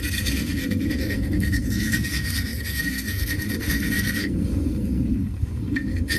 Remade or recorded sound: remade